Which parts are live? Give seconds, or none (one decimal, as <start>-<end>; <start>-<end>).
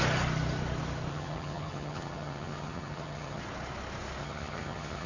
0.0-1.1; 3.4-4.2